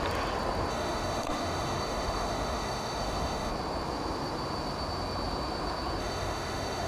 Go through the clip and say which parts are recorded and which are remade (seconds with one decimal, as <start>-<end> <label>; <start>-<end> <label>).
0.0-0.7 recorded; 0.7-3.5 remade; 3.5-6.0 recorded; 6.0-6.9 remade